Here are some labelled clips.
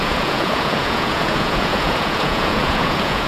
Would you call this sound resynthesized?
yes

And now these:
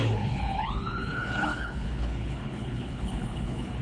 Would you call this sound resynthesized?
yes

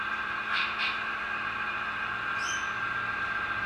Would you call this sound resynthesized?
no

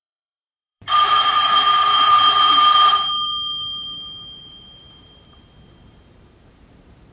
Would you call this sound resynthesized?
yes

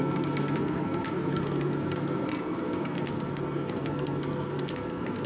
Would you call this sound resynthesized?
yes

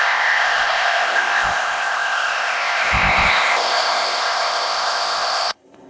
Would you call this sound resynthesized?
yes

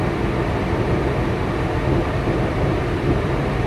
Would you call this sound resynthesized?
yes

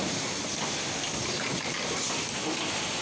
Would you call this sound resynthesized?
yes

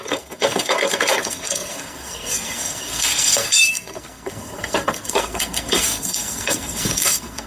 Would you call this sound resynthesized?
yes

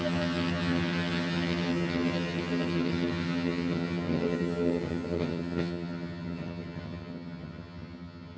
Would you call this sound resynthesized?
yes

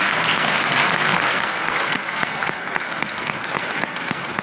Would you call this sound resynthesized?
yes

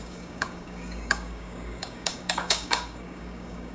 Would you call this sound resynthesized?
yes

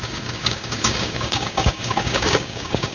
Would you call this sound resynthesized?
yes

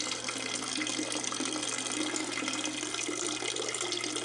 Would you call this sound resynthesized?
no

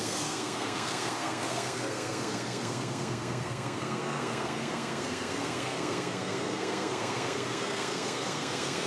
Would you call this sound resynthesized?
yes